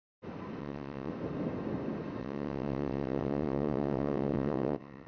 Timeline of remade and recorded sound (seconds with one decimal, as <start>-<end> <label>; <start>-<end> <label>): 0.0-0.6 recorded; 0.6-1.1 remade; 1.1-2.2 recorded; 2.2-5.1 remade